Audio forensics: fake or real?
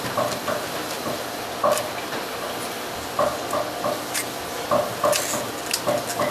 real